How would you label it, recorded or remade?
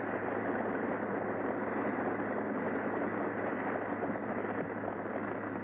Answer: recorded